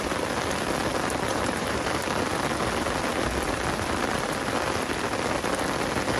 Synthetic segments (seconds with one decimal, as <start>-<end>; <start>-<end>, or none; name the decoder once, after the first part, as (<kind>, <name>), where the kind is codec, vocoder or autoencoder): 1.3-1.9 (vocoder, BigVGAN v2)